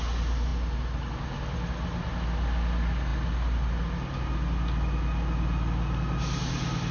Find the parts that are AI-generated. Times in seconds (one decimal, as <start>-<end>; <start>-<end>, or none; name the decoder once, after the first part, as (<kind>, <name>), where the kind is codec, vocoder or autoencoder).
none